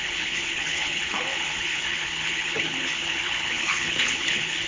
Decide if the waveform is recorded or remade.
remade